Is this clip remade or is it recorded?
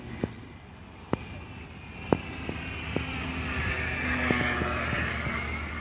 recorded